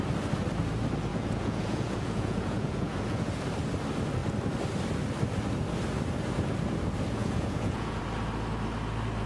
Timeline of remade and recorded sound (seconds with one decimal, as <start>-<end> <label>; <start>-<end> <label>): 0.0-1.1 recorded; 1.1-3.4 remade; 3.4-7.2 recorded; 7.2-8.0 remade; 8.0-9.3 recorded